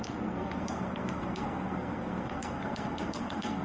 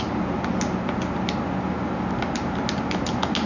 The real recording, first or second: second